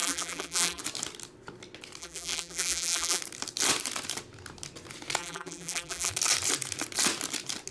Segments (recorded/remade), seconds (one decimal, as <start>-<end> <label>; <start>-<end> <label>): 0.0-0.8 remade; 0.8-2.0 recorded; 2.0-3.2 remade; 3.2-5.2 recorded; 5.2-6.1 remade; 6.1-7.7 recorded